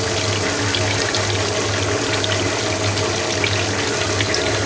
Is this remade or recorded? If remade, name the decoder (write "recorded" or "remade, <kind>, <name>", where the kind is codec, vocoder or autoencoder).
recorded